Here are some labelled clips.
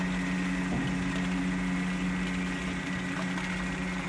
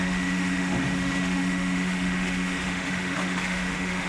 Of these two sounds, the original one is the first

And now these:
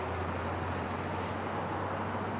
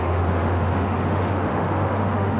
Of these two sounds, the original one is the first